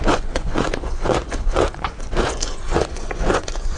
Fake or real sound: fake